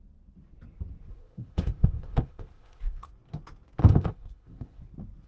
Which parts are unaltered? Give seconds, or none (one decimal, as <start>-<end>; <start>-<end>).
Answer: 0.0-1.1; 3.1-3.8; 4.8-5.3

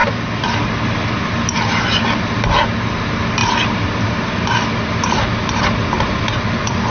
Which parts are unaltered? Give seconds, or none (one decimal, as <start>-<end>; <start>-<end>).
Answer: 0.0-6.9

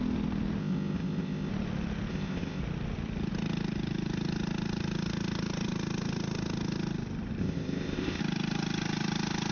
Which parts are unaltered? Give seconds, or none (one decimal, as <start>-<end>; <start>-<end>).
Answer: 0.0-0.6; 1.5-2.1; 2.6-7.4; 8.2-9.5